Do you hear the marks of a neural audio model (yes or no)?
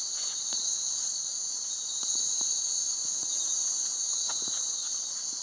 yes